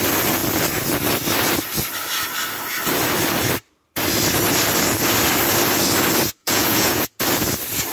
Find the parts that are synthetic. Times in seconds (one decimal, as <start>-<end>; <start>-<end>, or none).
6.4-7.1